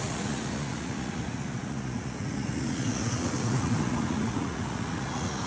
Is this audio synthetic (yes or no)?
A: yes